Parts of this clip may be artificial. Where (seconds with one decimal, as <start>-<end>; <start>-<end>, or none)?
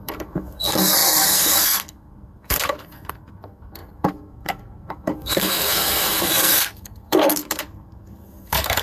0.0-8.8